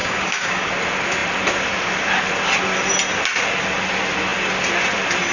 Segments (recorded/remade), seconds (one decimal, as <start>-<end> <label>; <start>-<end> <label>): 0.0-0.7 remade; 0.7-5.3 recorded